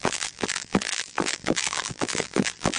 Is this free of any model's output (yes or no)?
no